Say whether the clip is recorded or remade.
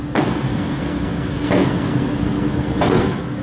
remade